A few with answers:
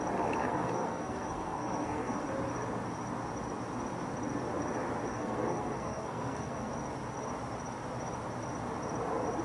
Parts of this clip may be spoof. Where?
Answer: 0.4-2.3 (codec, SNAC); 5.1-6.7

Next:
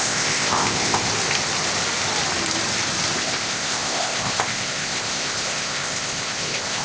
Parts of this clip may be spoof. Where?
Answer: 0.0-1.1 (codec, ZipCodec); 3.2-6.8

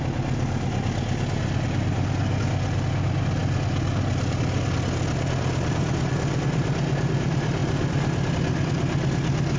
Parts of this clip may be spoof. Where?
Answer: 7.6-8.3 (vocoder, BigVGAN v2)

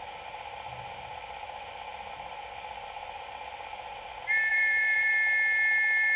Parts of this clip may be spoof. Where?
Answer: 4.5-5.1 (vocoder, BigVGAN v2)

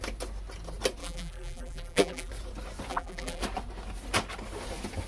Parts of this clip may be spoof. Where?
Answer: 1.0-2.3 (vocoder, BigVGAN v2); 2.9-3.4

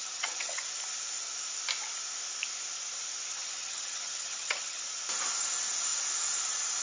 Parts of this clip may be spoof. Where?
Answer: 0.0-0.6 (vocoder, HiFi-GAN); 3.3-4.8